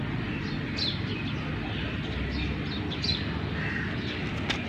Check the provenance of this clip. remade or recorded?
recorded